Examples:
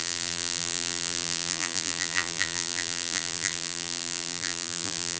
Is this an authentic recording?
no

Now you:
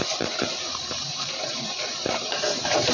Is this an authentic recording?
no